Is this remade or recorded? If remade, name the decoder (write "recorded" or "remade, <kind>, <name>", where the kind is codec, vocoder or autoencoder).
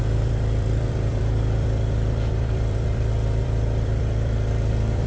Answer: remade, vocoder, BigVGAN v2